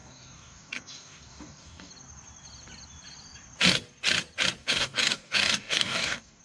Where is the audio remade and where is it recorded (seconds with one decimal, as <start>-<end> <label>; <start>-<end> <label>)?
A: 0.0-1.9 remade; 1.9-4.6 recorded; 4.6-6.4 remade